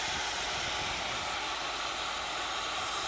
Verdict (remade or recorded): recorded